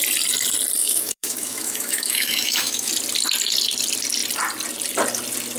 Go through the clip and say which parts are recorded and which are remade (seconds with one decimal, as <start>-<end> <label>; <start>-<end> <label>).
0.0-0.8 recorded; 0.8-2.9 remade; 2.9-5.6 recorded